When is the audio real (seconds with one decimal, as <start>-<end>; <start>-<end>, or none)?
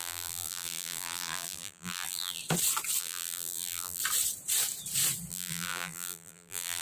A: 2.4-3.0; 4.0-5.3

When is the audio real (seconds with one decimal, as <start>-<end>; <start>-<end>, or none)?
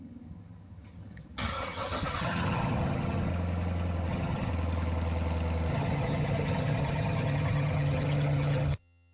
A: 3.3-4.1; 4.5-5.7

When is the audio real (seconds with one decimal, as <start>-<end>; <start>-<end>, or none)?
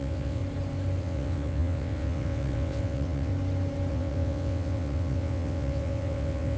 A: 0.4-1.0; 3.3-3.9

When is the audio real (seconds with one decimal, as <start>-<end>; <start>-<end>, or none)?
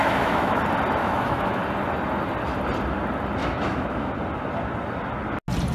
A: 0.6-1.0; 1.6-3.4; 4.1-5.7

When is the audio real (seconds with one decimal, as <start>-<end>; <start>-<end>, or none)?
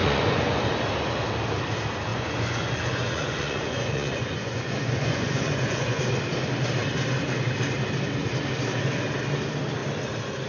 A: 0.6-2.1; 6.0-10.5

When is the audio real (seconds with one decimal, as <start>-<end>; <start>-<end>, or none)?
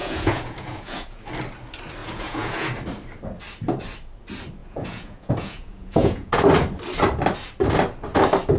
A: 1.2-2.0; 2.7-4.6; 6.3-8.6